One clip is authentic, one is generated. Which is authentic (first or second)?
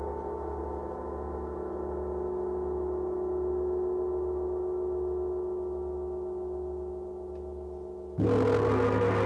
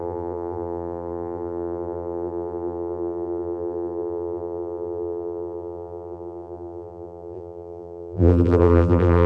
first